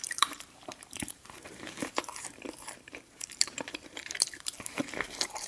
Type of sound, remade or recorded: remade